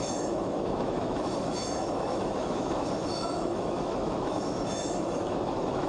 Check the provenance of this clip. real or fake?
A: fake